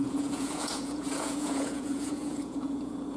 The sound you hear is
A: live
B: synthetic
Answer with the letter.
B